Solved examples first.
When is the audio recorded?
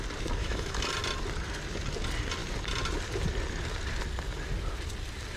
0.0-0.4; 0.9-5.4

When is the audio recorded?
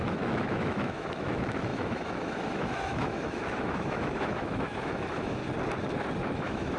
5.4-6.3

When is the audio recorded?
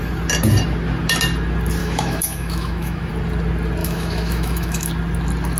0.0-1.8; 3.1-3.8; 4.9-5.6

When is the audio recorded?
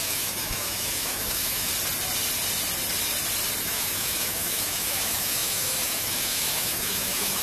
1.7-3.6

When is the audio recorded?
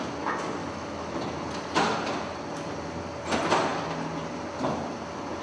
0.0-0.6; 1.2-5.4